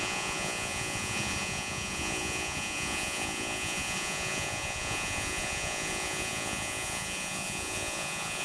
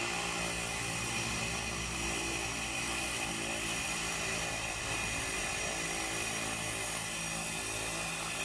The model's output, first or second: first